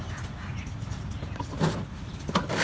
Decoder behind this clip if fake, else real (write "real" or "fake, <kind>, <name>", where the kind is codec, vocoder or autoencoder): real